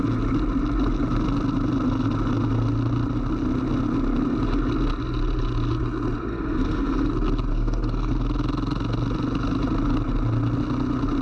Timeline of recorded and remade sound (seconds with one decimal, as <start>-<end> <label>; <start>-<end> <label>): 0.0-6.3 recorded; 6.3-7.1 remade; 7.1-7.5 recorded; 7.5-8.1 remade; 8.1-11.2 recorded